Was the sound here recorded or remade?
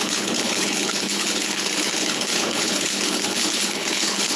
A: remade